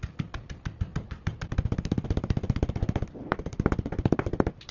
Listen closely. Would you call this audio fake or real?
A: fake